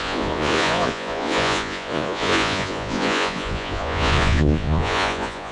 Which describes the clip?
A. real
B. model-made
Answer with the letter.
B